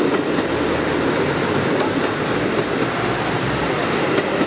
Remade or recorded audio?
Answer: recorded